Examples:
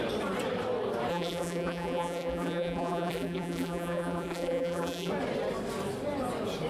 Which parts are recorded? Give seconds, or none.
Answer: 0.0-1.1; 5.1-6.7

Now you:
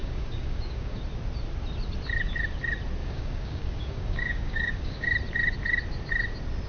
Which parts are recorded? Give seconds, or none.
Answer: 1.0-3.0; 5.1-6.7

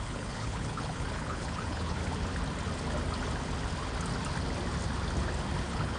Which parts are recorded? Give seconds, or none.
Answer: 2.0-5.6

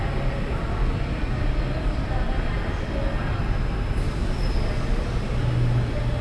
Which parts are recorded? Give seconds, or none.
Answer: 0.0-6.2

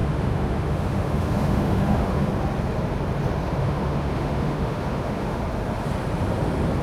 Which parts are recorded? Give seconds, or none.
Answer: 2.3-3.6; 5.4-6.8

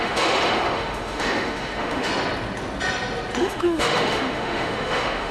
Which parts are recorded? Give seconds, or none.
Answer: 2.1-3.4

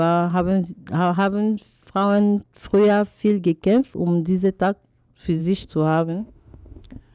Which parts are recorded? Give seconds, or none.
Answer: 0.0-5.4

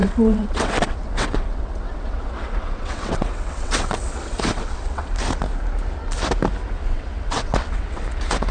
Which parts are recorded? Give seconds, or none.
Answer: 5.1-6.8; 8.0-8.5